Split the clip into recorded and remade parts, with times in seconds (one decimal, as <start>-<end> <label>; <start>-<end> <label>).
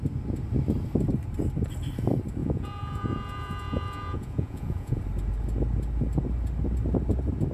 0.0-2.4 recorded; 2.4-5.0 remade; 5.0-7.5 recorded